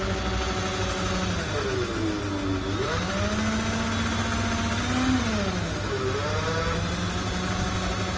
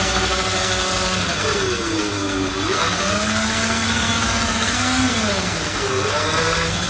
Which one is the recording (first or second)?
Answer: first